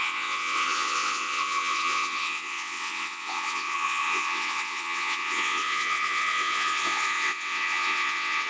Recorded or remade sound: remade